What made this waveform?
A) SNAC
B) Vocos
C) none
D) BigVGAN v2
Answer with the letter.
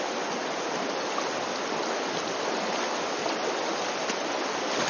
C